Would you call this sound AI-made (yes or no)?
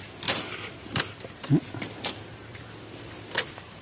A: yes